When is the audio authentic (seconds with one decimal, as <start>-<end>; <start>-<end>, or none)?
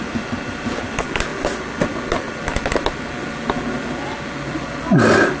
1.3-4.5